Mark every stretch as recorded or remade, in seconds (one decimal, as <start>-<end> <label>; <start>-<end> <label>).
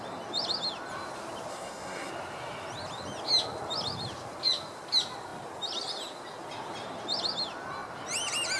0.0-1.5 recorded; 1.5-2.1 remade; 2.1-8.6 recorded